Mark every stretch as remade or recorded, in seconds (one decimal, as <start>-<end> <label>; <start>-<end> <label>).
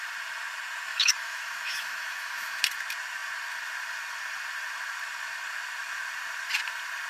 0.0-0.9 recorded; 0.9-2.6 remade; 2.6-7.1 recorded